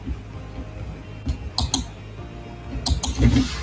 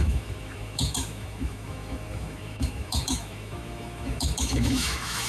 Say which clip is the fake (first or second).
second